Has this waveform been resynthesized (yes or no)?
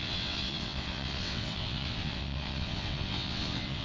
yes